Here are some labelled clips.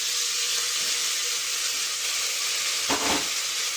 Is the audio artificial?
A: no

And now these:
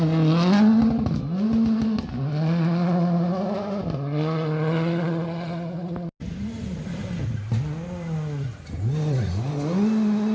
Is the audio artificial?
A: no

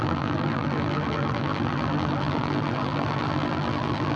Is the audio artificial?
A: yes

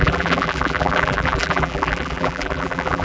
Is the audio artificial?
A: yes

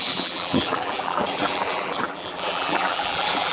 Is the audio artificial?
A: yes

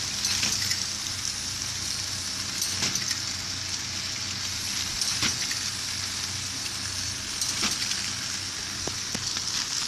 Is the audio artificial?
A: no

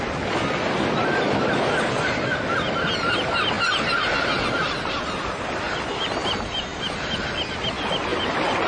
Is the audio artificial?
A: no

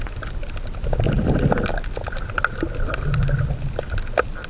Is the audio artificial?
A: no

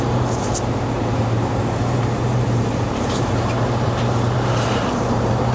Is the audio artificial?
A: yes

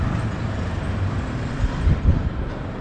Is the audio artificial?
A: yes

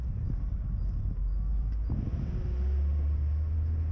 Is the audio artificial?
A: no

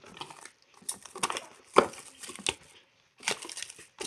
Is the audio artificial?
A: no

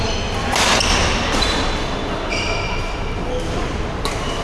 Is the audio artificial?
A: no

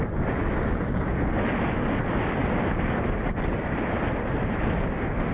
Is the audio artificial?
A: no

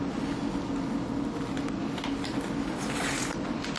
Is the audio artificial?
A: no